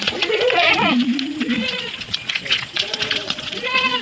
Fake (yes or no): yes